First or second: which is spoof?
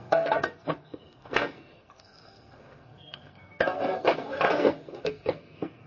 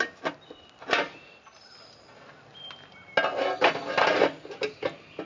first